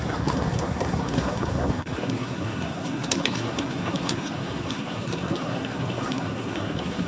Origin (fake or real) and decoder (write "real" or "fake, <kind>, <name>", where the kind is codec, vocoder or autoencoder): fake, codec, SNAC